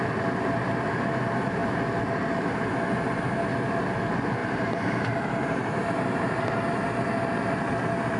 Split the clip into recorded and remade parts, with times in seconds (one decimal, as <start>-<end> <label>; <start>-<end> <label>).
0.0-4.4 recorded; 4.4-7.1 remade; 7.1-8.2 recorded